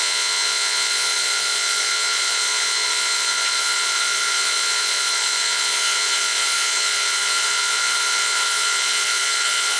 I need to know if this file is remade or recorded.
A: remade